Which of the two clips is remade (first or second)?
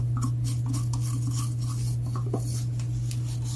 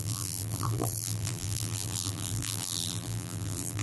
second